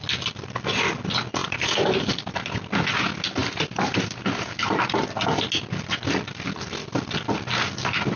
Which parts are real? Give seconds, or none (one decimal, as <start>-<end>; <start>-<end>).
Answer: 0.0-1.4; 2.1-3.4; 4.5-8.2